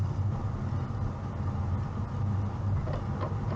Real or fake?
real